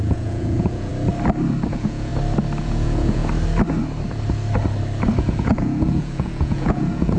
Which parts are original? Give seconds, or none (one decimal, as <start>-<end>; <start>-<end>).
0.9-1.7; 2.1-2.6; 3.2-5.2